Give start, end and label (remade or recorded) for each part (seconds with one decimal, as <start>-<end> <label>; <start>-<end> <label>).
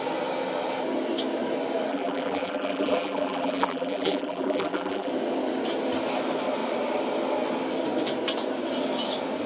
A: 0.0-1.9 recorded; 1.9-5.1 remade; 5.1-9.5 recorded